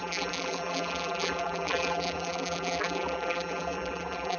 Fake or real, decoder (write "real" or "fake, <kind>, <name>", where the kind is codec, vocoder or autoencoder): fake, vocoder, BigVGAN v2